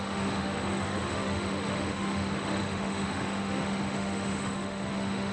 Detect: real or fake fake